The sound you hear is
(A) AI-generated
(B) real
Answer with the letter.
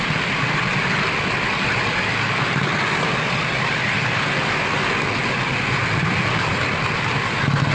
B